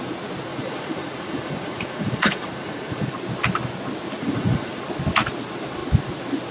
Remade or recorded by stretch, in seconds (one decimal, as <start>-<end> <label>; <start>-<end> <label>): 0.0-0.5 recorded; 0.5-3.1 remade; 3.1-4.2 recorded; 4.2-4.8 remade; 4.8-6.5 recorded